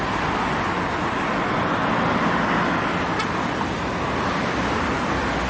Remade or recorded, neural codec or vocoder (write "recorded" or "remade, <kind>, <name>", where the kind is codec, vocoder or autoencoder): recorded